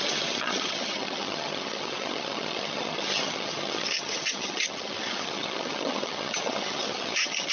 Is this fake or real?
fake